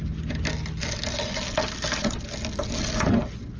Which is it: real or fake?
real